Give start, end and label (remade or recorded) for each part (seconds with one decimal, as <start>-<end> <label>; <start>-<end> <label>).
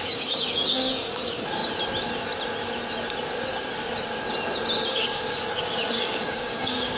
0.0-1.6 remade; 1.6-4.9 recorded; 4.9-7.0 remade